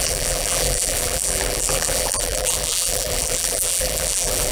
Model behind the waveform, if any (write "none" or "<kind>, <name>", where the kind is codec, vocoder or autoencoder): vocoder, BigVGAN v2